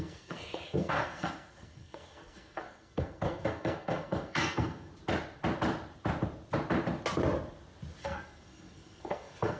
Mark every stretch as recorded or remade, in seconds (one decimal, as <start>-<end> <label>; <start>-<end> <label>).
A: 0.0-4.9 remade; 4.9-8.0 recorded; 8.0-9.6 remade